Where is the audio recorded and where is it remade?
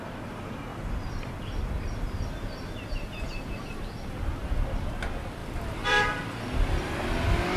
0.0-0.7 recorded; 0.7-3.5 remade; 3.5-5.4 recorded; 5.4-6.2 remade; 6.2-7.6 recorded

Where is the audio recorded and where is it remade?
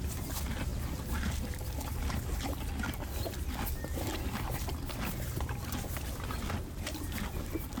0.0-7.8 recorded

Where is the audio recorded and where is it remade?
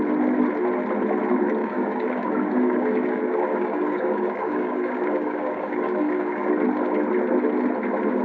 0.0-1.6 recorded; 1.6-6.5 remade; 6.5-8.2 recorded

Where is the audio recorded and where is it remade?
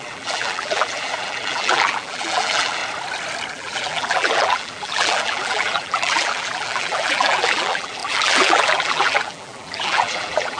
0.0-2.8 remade; 2.8-3.5 recorded; 3.5-10.6 remade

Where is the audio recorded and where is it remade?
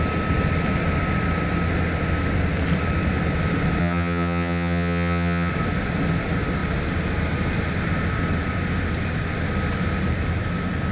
0.0-3.8 recorded; 3.8-5.5 remade; 5.5-10.9 recorded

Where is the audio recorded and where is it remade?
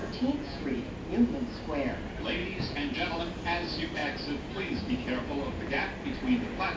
0.0-0.9 remade; 0.9-2.4 recorded; 2.4-3.2 remade; 3.2-6.8 recorded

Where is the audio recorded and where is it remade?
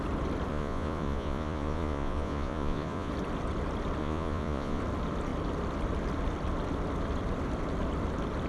0.0-0.5 recorded; 0.5-3.1 remade; 3.1-4.0 recorded; 4.0-4.8 remade; 4.8-8.5 recorded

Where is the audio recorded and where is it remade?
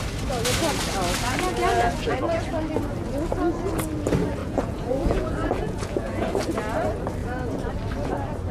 0.0-1.7 recorded; 1.7-2.5 remade; 2.5-4.4 recorded; 4.4-6.3 remade; 6.3-7.2 recorded; 7.2-7.7 remade; 7.7-8.5 recorded